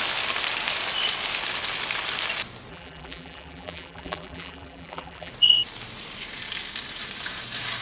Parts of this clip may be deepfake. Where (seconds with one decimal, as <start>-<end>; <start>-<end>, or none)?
2.7-5.3